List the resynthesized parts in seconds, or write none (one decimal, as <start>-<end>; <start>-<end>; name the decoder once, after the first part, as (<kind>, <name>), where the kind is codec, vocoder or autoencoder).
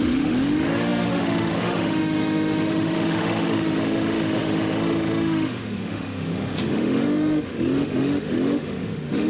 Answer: 0.0-9.3 (autoencoder, DAC-VAE)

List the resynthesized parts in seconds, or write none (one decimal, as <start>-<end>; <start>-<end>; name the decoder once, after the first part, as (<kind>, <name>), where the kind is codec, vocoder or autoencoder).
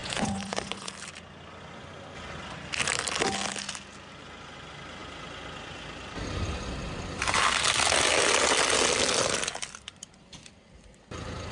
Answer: 0.0-0.9 (vocoder, Vocos)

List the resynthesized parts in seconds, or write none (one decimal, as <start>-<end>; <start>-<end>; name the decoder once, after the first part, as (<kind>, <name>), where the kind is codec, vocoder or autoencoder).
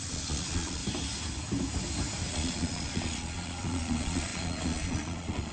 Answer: 0.0-0.8 (vocoder, Vocos); 2.3-5.5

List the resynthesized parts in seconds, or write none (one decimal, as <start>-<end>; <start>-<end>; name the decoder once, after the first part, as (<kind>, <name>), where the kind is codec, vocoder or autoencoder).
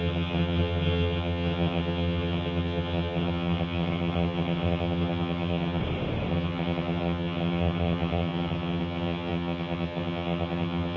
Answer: 0.0-5.8 (vocoder, HiFi-GAN); 6.3-11.0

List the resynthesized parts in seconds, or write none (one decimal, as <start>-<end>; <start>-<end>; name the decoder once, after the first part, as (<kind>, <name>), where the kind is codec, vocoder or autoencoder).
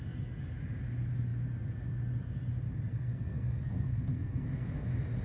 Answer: 2.9-4.8 (codec, SNAC)